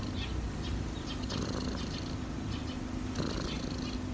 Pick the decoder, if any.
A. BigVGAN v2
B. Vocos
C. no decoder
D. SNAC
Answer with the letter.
C